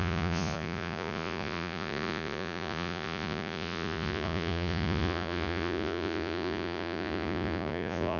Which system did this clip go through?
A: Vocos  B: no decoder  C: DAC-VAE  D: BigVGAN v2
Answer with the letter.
A